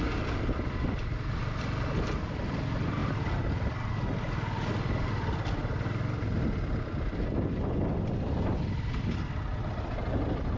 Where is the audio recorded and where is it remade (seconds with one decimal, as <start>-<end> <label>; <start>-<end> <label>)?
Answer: 0.0-10.6 recorded